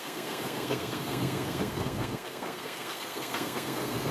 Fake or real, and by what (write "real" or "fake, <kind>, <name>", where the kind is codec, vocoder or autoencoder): fake, codec, SNAC